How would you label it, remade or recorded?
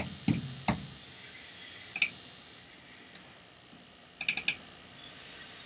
recorded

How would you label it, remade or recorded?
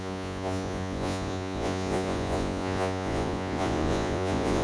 remade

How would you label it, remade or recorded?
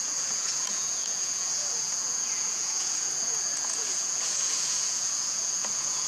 remade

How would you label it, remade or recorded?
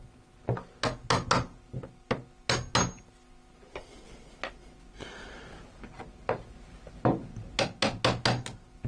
recorded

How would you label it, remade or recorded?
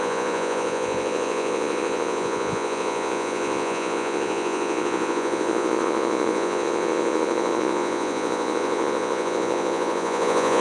remade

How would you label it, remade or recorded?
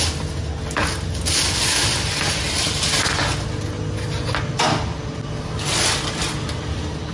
recorded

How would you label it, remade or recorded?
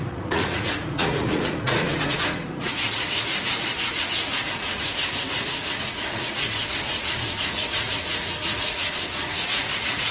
remade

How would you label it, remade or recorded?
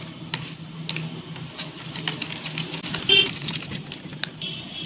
recorded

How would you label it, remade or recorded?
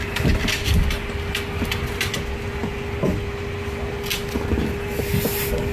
recorded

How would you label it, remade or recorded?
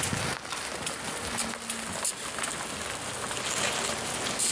recorded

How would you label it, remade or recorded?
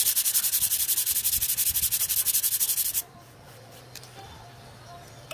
recorded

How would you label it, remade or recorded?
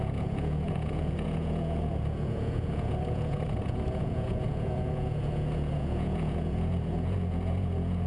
remade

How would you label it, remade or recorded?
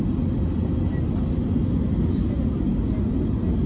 recorded